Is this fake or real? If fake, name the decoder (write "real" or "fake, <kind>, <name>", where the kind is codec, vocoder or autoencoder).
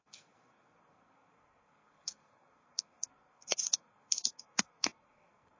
fake, codec, SNAC